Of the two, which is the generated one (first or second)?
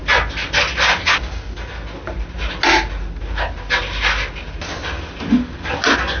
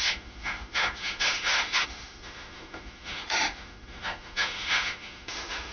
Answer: second